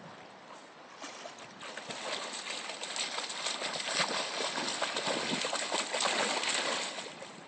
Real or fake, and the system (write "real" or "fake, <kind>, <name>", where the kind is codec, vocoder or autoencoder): real